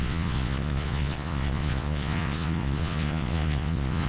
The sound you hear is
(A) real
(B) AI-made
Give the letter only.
B